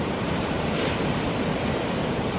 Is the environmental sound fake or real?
fake